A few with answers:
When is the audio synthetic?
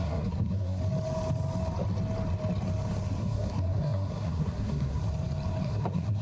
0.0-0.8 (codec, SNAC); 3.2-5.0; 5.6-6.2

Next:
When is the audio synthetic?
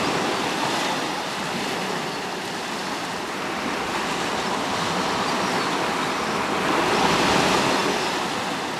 none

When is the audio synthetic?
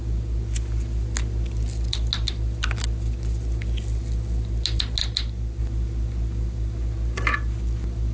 none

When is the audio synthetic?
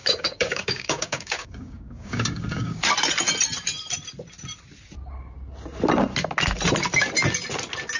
0.0-2.8 (codec, DAC)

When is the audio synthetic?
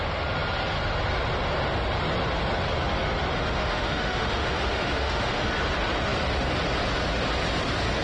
3.3-5.4 (autoencoder, DAC-VAE)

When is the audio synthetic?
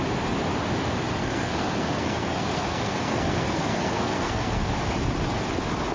1.2-4.7 (codec, SNAC)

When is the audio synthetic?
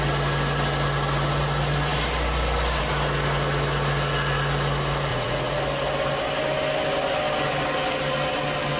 5.1-5.6 (vocoder, Vocos)